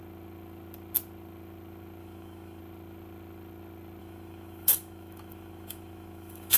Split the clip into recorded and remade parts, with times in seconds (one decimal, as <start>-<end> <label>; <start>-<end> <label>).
0.0-2.0 recorded; 2.0-2.6 remade; 2.6-4.0 recorded; 4.0-6.6 remade